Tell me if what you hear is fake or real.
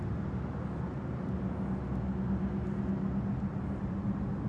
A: real